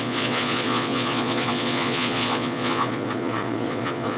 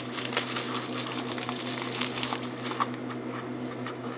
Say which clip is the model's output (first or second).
first